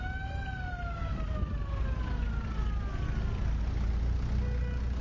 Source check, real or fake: real